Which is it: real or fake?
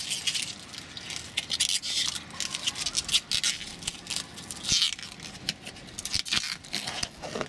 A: real